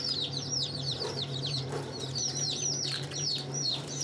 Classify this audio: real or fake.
fake